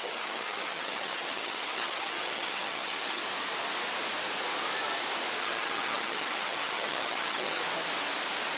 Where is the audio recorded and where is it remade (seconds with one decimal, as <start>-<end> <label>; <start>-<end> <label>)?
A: 0.0-3.2 remade; 3.2-5.4 recorded; 5.4-7.6 remade; 7.6-8.6 recorded